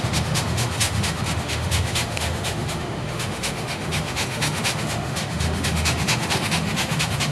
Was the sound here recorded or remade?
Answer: remade